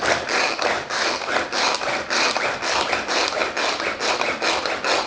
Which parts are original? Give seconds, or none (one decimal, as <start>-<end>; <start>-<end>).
0.0-5.1